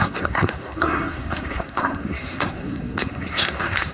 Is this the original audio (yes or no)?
no